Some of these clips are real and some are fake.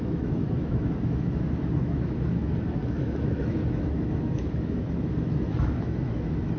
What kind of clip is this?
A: fake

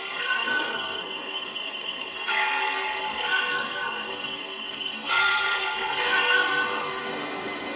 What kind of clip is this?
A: fake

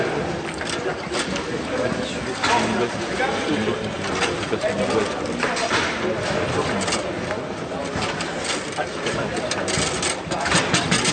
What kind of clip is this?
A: real